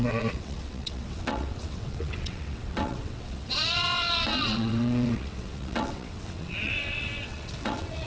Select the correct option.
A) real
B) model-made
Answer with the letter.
B